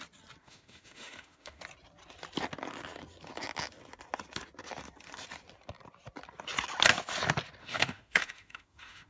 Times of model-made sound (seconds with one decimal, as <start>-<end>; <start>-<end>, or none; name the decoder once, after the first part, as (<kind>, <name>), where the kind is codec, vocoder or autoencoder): 0.4-1.6 (autoencoder, DAC-VAE); 7.6-9.1

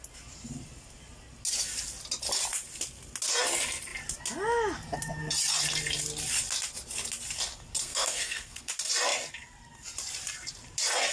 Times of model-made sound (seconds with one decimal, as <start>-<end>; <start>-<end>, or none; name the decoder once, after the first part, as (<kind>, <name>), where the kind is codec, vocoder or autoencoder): 7.8-8.7 (codec, SNAC)

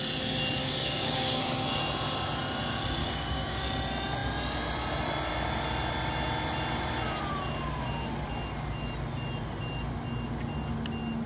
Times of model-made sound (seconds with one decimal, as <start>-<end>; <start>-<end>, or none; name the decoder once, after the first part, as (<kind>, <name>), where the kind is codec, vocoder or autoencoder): 0.6-1.4 (codec, DAC); 3.0-3.6

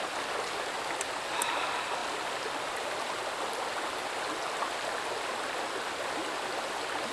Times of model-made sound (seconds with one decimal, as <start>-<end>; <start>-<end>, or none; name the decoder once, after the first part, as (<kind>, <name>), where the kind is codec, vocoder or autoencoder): none